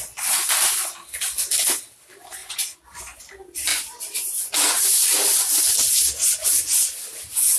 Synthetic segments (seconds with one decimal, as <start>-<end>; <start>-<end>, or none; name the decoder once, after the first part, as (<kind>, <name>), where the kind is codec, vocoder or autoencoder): 2.4-3.2 (vocoder, Vocos); 3.7-4.3; 6.4-6.9